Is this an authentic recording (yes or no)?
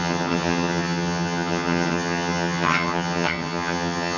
no